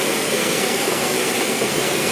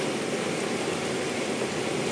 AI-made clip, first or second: first